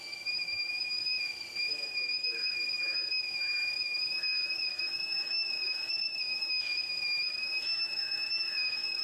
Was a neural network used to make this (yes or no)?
yes